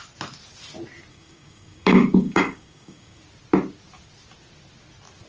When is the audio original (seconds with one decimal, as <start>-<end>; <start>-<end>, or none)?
0.0-1.1; 3.2-5.3